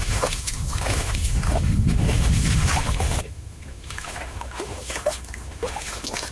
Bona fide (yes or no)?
no